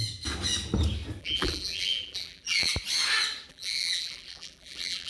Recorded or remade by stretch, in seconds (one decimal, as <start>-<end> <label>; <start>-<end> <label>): 0.0-1.2 recorded; 1.2-2.7 remade; 2.7-3.5 recorded; 3.5-5.1 remade